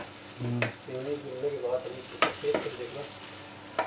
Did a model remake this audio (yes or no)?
no